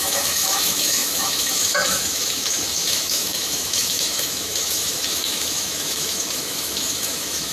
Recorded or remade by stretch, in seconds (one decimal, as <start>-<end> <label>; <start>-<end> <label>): 0.0-7.5 remade